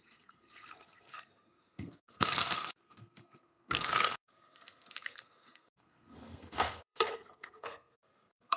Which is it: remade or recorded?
remade